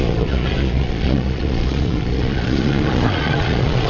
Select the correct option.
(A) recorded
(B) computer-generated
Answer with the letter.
B